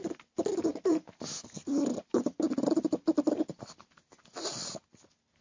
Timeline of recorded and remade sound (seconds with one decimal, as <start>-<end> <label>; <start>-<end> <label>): 0.0-5.4 recorded